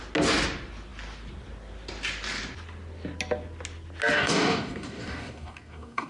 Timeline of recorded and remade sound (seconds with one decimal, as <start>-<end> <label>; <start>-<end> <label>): 0.0-4.1 recorded; 4.1-6.1 remade